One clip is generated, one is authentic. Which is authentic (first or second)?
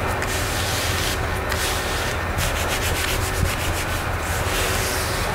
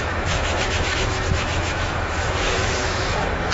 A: first